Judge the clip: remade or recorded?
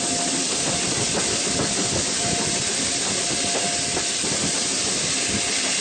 recorded